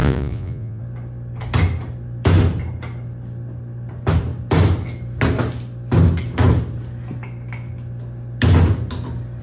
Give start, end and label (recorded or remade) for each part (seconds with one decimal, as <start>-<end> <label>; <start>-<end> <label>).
0.0-0.8 remade; 0.8-9.4 recorded